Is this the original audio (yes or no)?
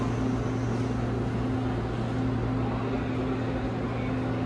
yes